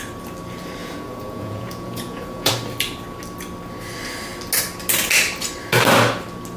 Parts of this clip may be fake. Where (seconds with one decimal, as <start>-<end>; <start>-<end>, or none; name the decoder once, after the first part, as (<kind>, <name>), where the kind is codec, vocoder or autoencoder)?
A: 0.8-2.5 (vocoder, Vocos)